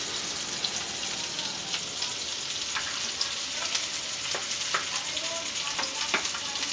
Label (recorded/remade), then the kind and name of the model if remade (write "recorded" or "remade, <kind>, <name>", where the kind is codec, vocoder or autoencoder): recorded